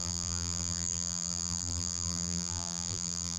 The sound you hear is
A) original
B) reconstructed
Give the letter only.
B